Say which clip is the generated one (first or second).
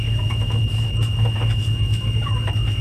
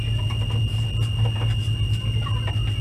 first